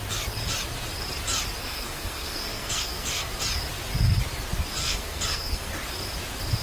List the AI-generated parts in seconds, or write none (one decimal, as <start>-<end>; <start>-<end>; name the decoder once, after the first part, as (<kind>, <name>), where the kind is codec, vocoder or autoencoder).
1.6-3.3 (codec, SNAC); 4.8-5.7